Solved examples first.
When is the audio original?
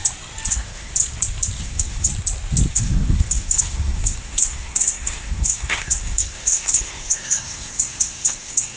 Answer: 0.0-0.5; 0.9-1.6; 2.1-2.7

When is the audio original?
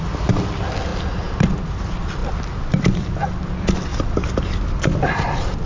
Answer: 0.0-2.2; 3.3-3.9